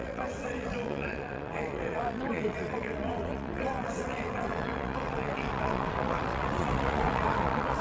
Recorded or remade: remade